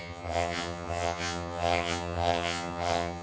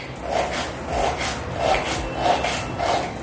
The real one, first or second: second